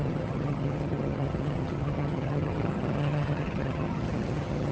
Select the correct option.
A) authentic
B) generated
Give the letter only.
B